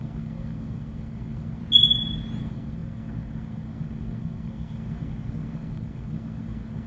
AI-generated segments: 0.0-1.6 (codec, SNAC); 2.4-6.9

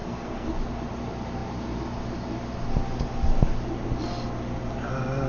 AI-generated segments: 0.0-0.5 (codec, SNAC)

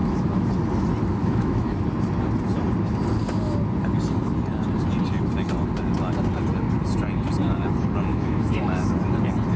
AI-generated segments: 0.0-0.5 (autoencoder, DAC-VAE); 1.2-1.8; 8.1-8.9